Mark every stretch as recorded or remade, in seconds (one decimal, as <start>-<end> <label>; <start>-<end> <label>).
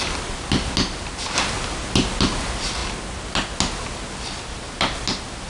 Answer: 0.0-5.5 recorded